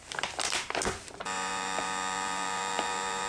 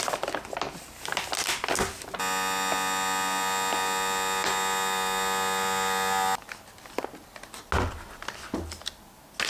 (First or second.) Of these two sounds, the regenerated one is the first